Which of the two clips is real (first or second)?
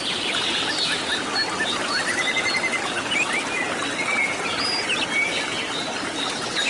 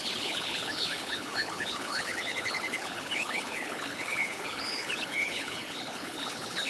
first